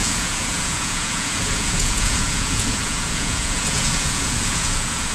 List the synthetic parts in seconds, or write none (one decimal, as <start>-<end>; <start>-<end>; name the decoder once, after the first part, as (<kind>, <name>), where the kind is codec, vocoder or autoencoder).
0.0-5.1 (vocoder, Vocos)